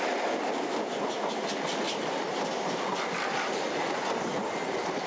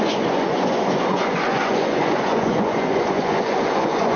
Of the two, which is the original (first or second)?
first